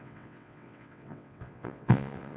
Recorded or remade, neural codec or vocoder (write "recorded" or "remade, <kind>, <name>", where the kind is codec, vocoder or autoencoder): remade, vocoder, WaveNeXt